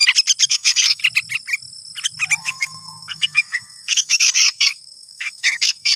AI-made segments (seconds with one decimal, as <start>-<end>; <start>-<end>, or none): 0.5-1.0; 2.4-6.0